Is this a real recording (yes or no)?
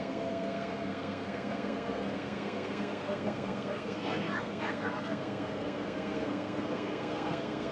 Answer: no